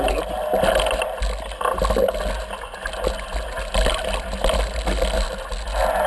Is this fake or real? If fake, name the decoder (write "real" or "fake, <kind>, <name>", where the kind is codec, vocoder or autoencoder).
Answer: real